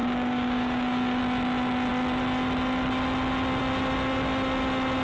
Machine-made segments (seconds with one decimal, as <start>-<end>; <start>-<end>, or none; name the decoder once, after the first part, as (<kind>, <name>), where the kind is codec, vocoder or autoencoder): 0.0-1.2 (codec, DAC)